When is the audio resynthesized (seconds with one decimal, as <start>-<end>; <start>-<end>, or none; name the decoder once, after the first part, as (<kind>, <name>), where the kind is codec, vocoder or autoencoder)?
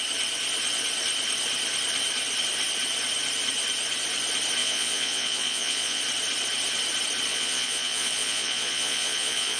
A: 4.6-6.0 (vocoder, Vocos); 7.3-9.6